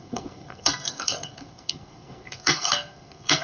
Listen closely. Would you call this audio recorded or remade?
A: remade